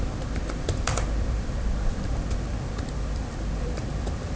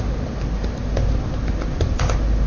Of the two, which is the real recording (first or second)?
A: second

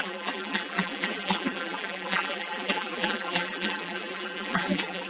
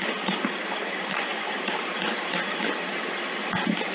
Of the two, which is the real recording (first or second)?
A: second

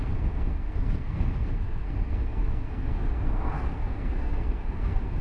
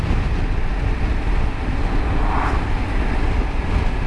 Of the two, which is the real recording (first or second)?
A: second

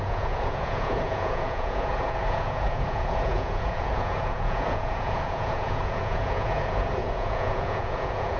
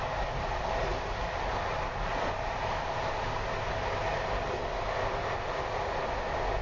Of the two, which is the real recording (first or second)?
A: second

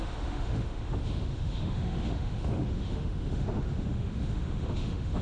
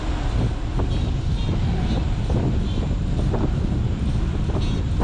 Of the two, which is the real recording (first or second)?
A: second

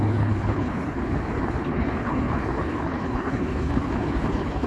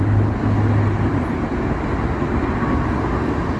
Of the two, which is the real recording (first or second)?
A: second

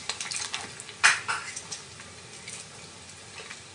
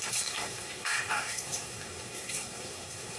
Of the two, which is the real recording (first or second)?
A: first